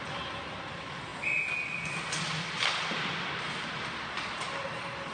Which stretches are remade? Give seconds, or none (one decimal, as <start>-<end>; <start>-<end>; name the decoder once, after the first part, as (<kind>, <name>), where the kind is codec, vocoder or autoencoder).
none